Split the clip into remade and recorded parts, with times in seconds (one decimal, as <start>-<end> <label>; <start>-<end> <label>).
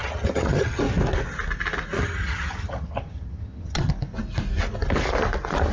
0.0-0.8 remade; 0.8-2.0 recorded; 2.0-3.9 remade; 3.9-5.7 recorded